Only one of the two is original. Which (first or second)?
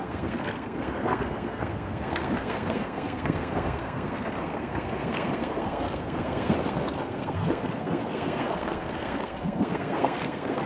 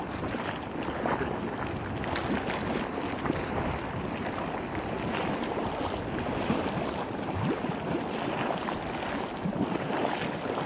second